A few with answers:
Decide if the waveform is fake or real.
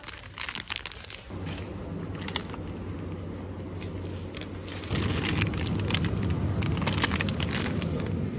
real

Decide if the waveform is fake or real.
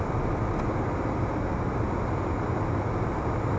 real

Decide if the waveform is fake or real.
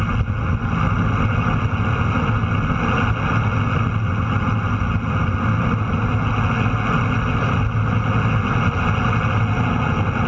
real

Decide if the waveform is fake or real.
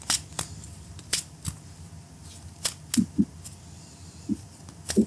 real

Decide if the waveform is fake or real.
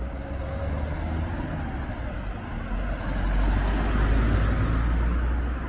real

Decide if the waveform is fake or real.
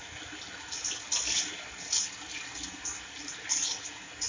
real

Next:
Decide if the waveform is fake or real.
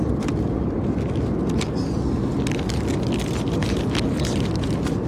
real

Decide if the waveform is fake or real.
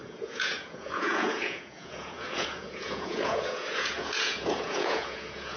fake